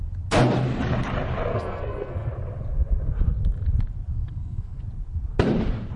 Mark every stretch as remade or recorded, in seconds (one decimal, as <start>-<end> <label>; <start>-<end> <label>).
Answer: 0.0-1.5 recorded; 1.5-2.3 remade; 2.3-4.1 recorded; 4.1-4.8 remade; 4.8-6.0 recorded